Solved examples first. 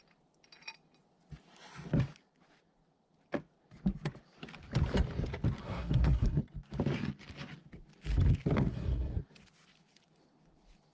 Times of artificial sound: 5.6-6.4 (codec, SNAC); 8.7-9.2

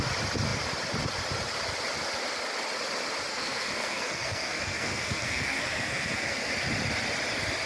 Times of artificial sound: 3.3-6.5 (codec, SNAC)

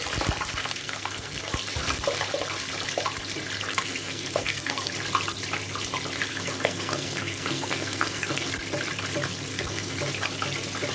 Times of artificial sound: 0.6-1.5 (codec, SNAC); 3.7-4.9; 6.3-8.5; 9.5-10.0

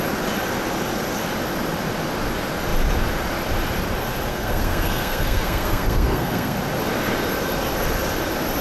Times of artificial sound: 4.3-6.6 (codec, SNAC)